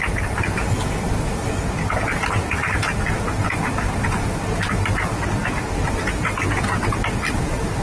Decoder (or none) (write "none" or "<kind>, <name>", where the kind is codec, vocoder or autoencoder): none